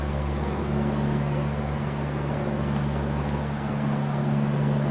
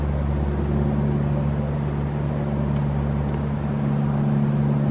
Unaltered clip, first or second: second